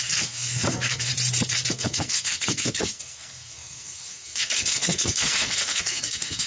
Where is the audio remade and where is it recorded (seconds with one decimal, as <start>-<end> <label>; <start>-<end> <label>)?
0.0-1.1 remade; 1.1-1.7 recorded; 1.7-6.5 remade